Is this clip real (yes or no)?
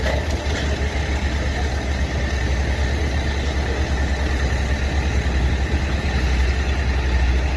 yes